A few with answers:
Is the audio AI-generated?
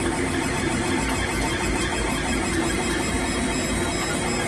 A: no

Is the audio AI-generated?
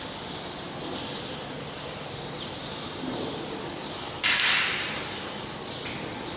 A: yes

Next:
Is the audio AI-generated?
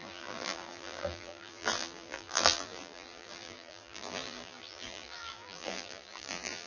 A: yes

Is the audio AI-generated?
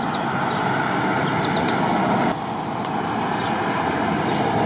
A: no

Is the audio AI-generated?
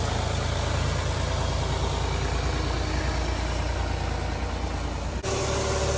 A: no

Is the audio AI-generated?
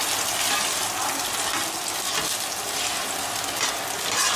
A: no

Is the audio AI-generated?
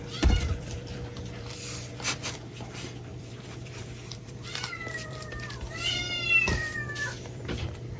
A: yes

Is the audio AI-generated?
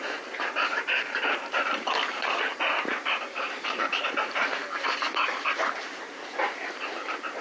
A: yes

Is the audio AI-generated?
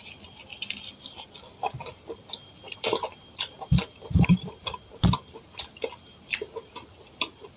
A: no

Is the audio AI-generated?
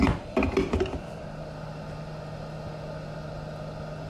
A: no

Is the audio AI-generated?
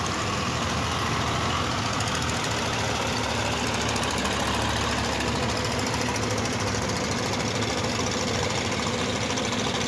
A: no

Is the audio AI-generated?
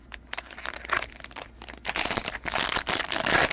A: no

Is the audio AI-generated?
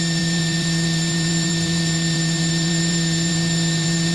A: yes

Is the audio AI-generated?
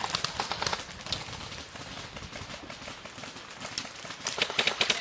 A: no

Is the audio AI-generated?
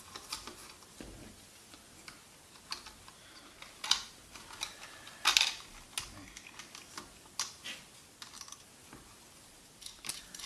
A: no